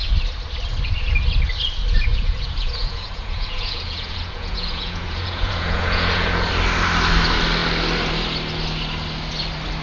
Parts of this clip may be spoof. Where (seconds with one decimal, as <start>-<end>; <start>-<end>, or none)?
2.1-6.5